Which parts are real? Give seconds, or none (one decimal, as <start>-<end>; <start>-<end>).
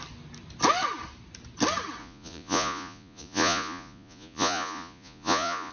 0.0-2.0